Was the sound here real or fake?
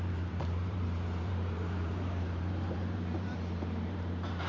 fake